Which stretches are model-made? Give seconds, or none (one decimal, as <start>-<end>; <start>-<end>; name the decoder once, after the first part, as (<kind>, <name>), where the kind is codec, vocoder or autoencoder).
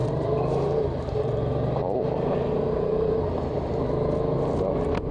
0.0-3.1 (vocoder, BigVGAN v2)